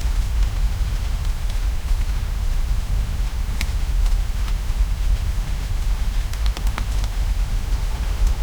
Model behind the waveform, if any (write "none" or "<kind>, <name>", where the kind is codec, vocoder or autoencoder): autoencoder, DAC-VAE